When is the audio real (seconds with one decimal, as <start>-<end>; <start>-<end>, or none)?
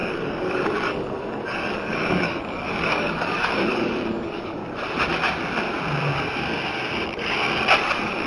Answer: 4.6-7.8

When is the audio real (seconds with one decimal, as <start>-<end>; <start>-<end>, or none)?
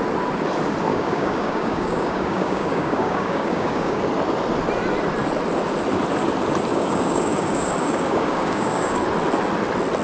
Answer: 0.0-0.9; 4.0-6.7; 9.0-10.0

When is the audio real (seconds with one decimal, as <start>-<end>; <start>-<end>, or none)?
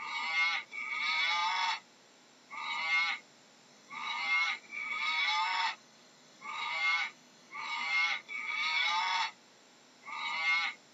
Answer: 0.0-3.7; 8.9-10.9